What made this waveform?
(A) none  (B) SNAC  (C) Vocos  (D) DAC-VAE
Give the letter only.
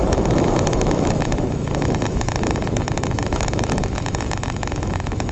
D